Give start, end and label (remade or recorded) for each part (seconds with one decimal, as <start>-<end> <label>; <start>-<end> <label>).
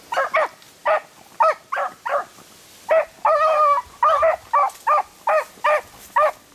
0.0-0.8 recorded; 0.8-2.3 remade; 2.3-6.5 recorded